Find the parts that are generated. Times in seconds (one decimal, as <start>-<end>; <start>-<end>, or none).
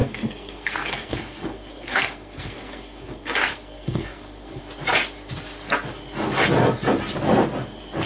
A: 0.0-4.6